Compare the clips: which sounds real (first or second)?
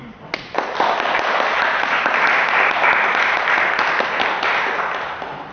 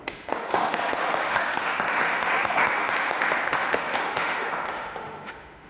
first